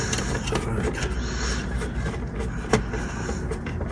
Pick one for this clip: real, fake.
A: real